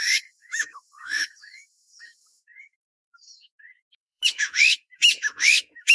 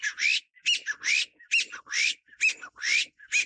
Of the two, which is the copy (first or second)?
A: first